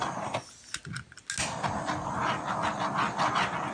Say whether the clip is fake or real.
real